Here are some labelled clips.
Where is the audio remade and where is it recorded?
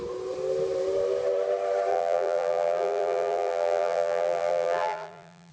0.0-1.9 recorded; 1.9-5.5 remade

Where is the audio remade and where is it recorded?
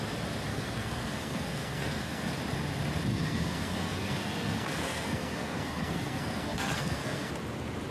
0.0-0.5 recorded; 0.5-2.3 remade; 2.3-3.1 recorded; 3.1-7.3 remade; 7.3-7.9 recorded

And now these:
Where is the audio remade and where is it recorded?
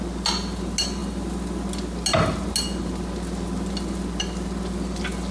0.0-5.3 recorded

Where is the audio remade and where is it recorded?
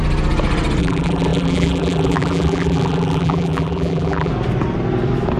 0.0-0.8 recorded; 0.8-4.3 remade; 4.3-5.4 recorded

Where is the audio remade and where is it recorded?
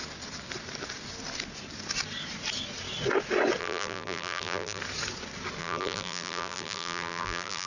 0.0-3.6 recorded; 3.6-4.8 remade; 4.8-5.6 recorded; 5.6-7.7 remade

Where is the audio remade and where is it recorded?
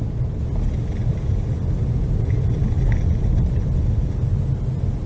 0.0-5.1 recorded